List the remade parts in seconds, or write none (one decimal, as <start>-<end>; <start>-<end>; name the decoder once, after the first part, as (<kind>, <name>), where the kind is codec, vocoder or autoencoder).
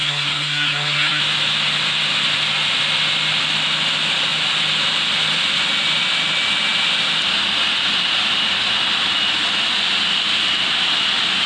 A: 0.0-1.2 (codec, SNAC)